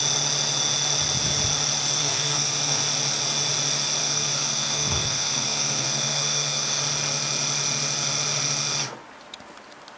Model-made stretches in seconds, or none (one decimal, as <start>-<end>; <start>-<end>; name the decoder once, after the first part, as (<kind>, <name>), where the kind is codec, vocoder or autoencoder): 2.0-2.8 (codec, SNAC); 4.0-6.8